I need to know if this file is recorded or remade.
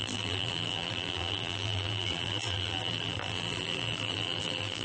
remade